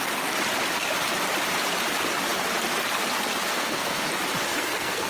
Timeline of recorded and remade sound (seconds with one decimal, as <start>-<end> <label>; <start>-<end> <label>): 0.0-3.5 recorded; 3.5-4.1 remade; 4.1-4.5 recorded; 4.5-5.1 remade